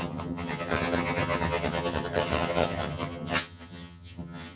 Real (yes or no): no